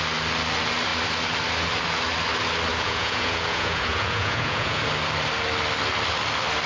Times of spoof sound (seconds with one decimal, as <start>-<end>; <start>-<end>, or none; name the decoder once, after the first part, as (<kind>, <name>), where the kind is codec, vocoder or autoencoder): 2.7-4.8 (vocoder, Vocos)